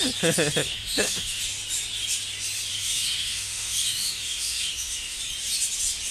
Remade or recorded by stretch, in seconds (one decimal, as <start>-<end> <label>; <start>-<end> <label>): 0.0-0.6 recorded; 0.6-1.4 remade; 1.4-2.7 recorded; 2.7-5.2 remade; 5.2-6.1 recorded

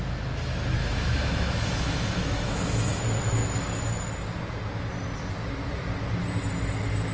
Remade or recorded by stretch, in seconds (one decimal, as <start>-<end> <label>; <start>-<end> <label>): 0.0-0.8 recorded; 0.8-3.0 remade; 3.0-7.1 recorded